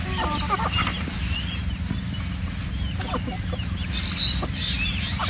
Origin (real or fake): real